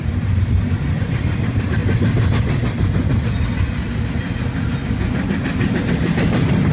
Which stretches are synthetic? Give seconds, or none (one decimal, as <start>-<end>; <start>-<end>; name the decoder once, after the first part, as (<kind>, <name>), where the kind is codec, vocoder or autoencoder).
none